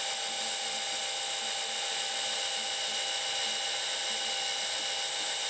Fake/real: real